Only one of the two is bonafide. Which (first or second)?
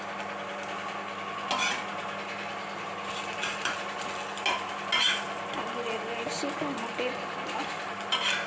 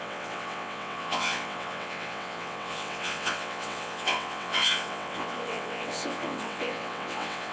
first